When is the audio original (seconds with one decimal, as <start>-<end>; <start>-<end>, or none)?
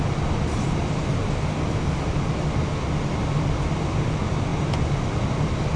0.0-0.5; 1.3-5.8